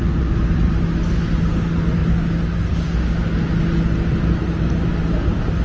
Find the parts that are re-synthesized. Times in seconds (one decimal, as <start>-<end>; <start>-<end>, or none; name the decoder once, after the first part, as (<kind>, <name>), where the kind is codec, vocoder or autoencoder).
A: none